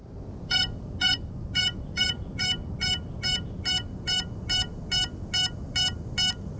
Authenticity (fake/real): real